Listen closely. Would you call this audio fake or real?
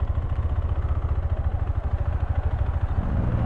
real